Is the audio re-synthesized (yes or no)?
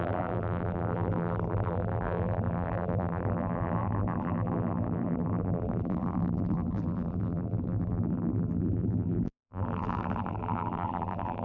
yes